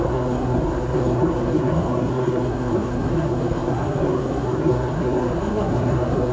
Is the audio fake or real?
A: fake